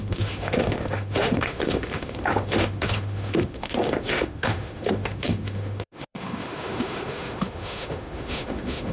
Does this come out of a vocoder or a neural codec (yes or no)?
yes